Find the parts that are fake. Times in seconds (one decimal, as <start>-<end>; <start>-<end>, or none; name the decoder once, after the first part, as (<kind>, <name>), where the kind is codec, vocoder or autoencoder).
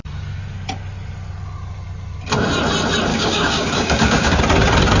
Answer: 3.1-4.4 (codec, DAC)